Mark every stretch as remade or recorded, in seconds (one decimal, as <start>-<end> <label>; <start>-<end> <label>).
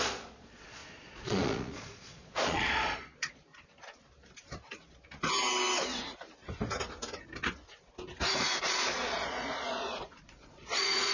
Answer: 0.0-3.5 remade; 3.5-8.6 recorded; 8.6-11.1 remade